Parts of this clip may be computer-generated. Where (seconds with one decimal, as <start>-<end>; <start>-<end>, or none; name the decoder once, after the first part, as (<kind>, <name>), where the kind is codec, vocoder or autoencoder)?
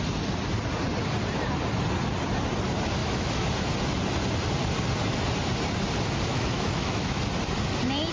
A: 3.0-3.5 (autoencoder, DAC-VAE); 6.3-7.2